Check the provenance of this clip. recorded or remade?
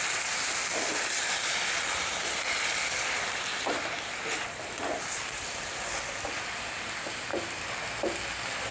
recorded